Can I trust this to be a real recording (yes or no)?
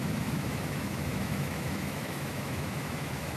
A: no